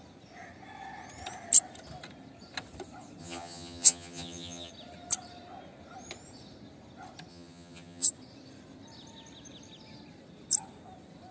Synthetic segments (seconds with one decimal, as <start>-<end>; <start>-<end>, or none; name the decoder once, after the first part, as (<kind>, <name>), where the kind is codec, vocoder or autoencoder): 3.2-4.7 (vocoder, HiFi-GAN); 7.3-8.1